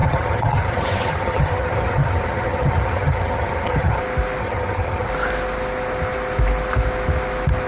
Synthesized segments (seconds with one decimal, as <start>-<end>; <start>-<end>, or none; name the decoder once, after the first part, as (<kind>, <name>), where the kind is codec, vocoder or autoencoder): 0.0-4.0 (vocoder, HiFi-GAN); 4.4-5.1